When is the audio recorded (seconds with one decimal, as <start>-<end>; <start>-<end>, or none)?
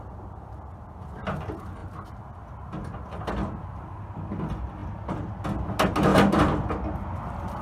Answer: 0.0-6.1; 6.7-7.6